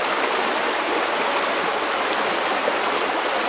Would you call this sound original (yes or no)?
yes